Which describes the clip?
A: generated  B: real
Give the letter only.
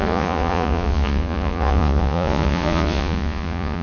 A